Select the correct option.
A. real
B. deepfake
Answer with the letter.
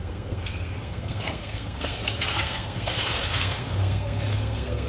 B